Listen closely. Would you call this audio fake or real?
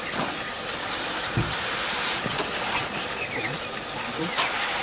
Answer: real